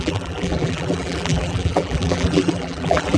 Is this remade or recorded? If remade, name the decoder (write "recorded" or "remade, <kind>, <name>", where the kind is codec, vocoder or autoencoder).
remade, vocoder, BigVGAN v2